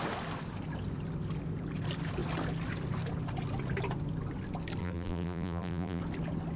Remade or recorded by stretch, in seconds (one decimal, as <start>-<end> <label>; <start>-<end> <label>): 0.0-4.8 recorded; 4.8-6.0 remade; 6.0-6.6 recorded